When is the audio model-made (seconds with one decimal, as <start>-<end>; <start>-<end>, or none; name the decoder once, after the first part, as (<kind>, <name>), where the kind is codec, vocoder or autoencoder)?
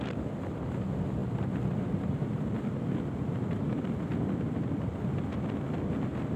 1.2-5.0 (vocoder, BigVGAN v2)